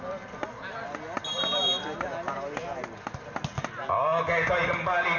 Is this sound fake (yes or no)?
no